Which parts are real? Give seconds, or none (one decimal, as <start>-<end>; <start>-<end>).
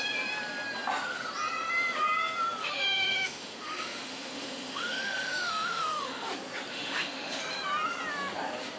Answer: 0.0-2.6; 6.3-6.7; 7.4-8.8